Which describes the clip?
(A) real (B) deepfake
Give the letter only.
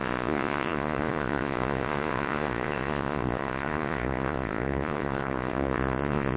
B